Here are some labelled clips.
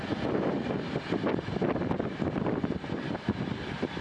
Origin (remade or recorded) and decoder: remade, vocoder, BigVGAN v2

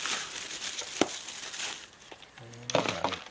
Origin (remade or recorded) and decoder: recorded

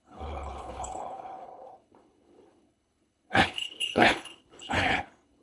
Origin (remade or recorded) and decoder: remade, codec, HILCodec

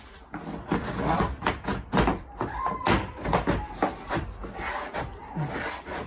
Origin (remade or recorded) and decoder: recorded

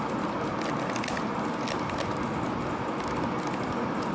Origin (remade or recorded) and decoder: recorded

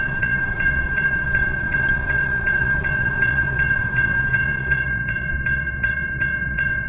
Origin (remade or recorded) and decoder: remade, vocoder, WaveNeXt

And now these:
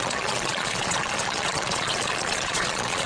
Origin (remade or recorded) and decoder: remade, vocoder, Vocos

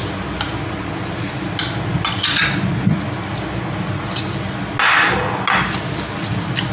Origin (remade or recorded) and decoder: recorded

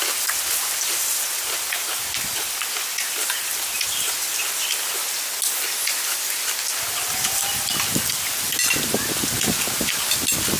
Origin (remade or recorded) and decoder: recorded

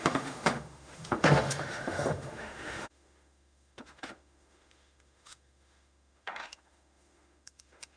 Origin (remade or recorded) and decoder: remade, autoencoder, DAC-VAE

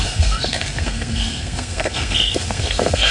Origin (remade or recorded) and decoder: remade, codec, SNAC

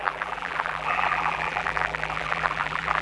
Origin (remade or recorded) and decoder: remade, vocoder, BigVGAN v2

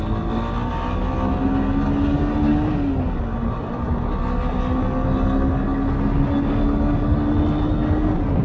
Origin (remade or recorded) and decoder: recorded